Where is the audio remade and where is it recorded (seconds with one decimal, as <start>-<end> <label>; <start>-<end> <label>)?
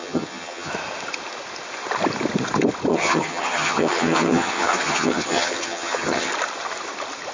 0.0-0.7 remade; 0.7-2.9 recorded; 2.9-6.3 remade; 6.3-7.3 recorded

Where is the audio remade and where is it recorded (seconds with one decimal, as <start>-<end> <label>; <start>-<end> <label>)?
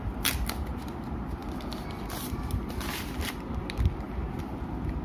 0.0-5.0 recorded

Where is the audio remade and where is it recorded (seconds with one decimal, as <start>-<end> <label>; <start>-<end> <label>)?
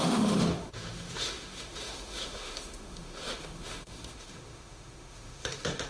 0.0-5.9 remade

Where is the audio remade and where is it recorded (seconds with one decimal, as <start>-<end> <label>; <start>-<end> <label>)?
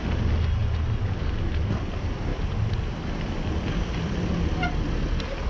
0.0-2.3 recorded; 2.3-3.1 remade; 3.1-5.5 recorded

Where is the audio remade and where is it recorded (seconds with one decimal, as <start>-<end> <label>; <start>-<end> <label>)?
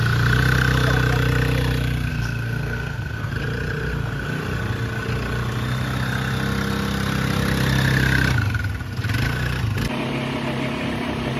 0.0-2.1 recorded; 2.1-3.3 remade; 3.3-11.4 recorded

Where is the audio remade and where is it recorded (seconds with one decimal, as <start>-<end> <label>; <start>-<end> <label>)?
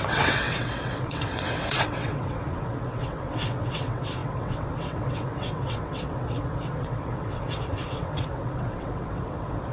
0.0-9.7 remade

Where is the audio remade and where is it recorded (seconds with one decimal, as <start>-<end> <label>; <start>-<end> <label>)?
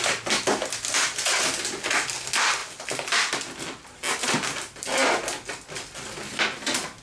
0.0-7.0 recorded